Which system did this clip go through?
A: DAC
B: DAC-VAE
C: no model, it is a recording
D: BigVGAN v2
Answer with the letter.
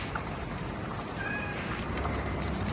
D